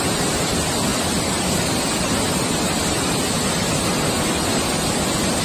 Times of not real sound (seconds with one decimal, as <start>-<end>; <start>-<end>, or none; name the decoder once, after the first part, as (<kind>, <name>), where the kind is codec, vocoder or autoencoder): none